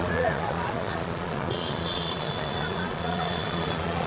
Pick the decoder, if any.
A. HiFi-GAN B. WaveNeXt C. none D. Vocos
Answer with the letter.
D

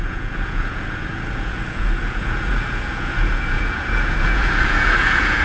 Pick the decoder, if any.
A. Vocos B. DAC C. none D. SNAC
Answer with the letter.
A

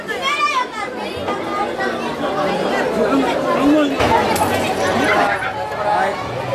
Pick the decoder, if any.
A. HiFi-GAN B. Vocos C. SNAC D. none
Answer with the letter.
D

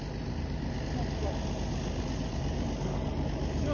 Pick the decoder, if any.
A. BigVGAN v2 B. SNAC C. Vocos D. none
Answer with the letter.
D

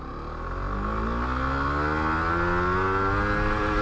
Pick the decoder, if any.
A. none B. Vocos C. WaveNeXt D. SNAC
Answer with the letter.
A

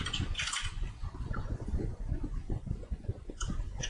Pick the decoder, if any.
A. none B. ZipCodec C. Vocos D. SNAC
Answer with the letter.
C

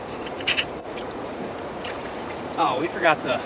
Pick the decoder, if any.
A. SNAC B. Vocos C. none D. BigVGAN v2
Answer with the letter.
B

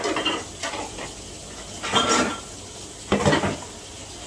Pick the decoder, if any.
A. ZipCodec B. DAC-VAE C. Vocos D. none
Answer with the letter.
D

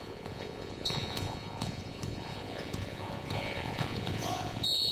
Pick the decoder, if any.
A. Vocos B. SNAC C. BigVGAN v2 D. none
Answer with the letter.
A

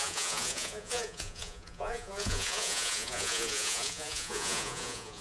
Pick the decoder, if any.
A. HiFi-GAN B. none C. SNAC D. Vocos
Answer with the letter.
D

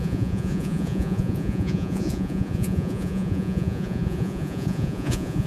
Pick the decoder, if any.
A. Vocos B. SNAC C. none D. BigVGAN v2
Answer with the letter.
A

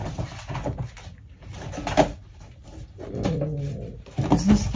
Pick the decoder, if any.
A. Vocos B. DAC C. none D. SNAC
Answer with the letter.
C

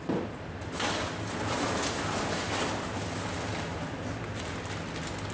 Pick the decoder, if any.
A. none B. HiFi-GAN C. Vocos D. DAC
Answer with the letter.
A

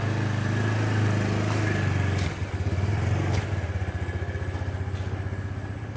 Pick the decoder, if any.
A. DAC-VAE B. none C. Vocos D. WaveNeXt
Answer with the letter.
B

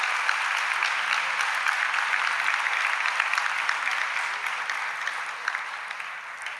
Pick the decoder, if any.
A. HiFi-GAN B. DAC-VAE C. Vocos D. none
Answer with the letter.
D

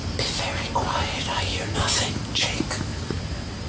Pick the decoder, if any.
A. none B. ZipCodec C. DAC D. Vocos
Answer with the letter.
A